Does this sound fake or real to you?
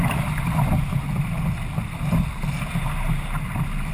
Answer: real